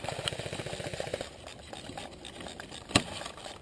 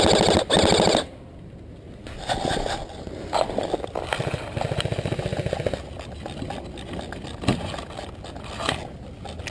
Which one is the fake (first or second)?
first